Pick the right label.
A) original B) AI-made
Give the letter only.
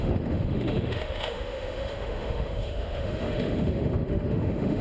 B